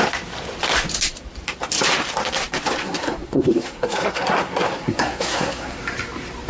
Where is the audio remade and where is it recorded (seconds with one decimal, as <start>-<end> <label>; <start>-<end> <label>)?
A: 0.0-2.8 recorded; 2.8-5.8 remade; 5.8-6.5 recorded